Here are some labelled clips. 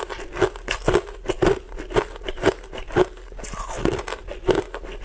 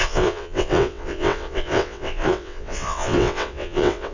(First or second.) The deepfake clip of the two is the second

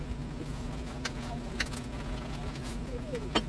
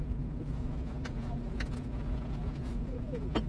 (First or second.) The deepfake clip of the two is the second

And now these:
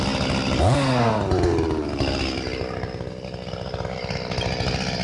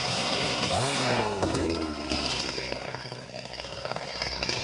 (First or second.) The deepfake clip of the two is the second